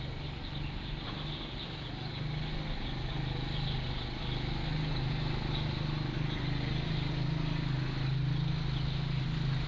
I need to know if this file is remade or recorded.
recorded